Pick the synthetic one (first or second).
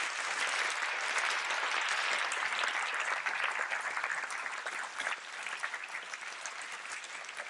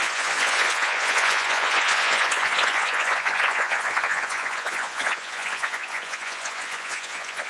second